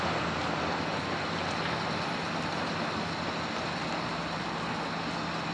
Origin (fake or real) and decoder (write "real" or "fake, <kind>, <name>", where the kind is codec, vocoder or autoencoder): real